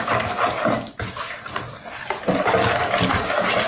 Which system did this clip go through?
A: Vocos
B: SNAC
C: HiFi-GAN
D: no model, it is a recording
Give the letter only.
D